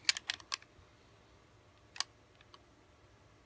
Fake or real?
real